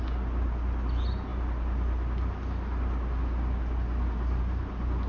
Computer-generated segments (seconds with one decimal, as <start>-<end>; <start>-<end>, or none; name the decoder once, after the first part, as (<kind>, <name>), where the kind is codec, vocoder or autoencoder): none